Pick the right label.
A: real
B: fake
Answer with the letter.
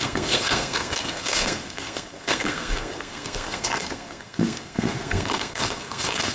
B